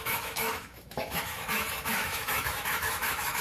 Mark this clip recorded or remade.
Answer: remade